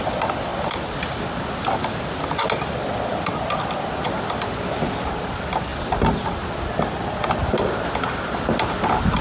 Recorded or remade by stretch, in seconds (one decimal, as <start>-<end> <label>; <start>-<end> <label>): 0.0-9.2 recorded